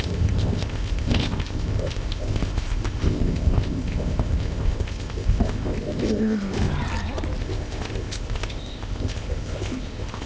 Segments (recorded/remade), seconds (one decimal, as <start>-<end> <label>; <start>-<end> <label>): 0.0-6.7 remade; 6.7-7.4 recorded; 7.4-10.3 remade